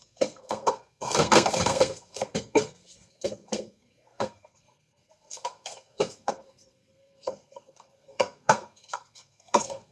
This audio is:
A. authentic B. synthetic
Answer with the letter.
B